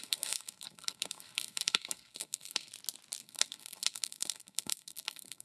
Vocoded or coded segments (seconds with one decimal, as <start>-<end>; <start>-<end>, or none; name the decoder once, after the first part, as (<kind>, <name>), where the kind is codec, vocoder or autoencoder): 0.0-2.7 (codec, SNAC); 3.2-5.4